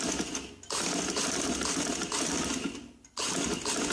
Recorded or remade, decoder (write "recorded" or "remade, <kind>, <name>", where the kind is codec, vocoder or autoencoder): recorded